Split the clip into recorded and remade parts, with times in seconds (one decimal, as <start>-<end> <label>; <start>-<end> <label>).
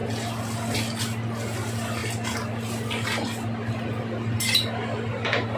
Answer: 0.0-5.6 recorded